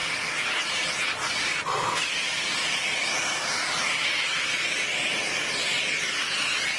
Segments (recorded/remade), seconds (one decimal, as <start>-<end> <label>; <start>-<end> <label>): 0.0-6.8 recorded